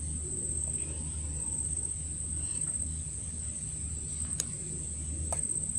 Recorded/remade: recorded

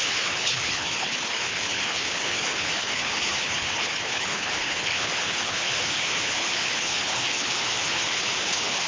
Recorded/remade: remade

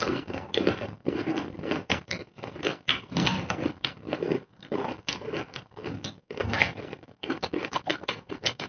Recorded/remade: remade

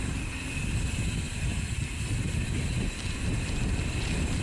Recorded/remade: recorded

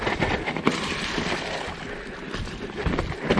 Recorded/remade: recorded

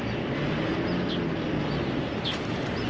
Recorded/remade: recorded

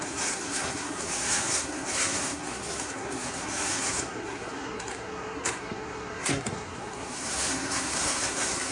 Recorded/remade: remade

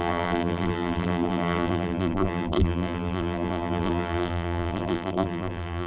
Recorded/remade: remade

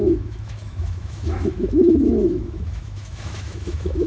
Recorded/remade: remade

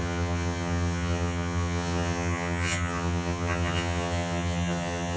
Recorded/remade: remade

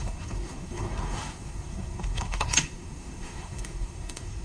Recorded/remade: remade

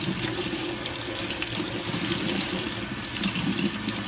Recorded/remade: recorded